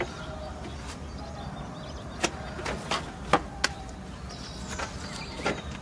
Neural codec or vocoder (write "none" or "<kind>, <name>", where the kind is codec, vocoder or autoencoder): none